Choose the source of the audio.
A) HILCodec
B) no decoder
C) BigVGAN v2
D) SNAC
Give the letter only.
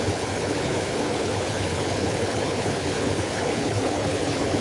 A